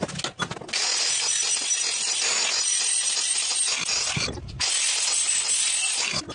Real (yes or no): yes